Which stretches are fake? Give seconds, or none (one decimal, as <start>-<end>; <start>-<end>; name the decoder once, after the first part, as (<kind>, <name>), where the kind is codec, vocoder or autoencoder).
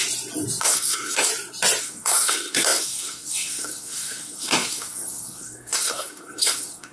0.6-1.3 (codec, SNAC); 1.8-6.9